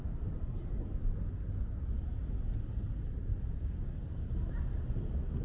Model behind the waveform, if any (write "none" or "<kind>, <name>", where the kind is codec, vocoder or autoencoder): none